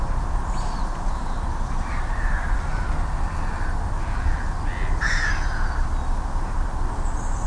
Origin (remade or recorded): recorded